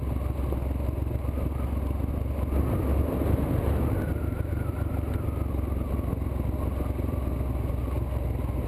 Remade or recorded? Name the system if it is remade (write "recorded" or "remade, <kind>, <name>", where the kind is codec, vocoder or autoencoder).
recorded